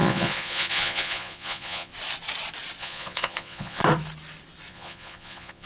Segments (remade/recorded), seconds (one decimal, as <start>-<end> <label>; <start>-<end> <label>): 0.0-1.9 remade; 1.9-2.8 recorded; 2.8-3.8 remade; 3.8-4.7 recorded; 4.7-5.7 remade